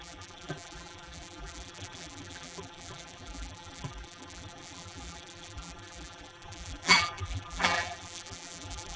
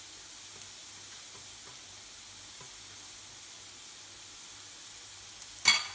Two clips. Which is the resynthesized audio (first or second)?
first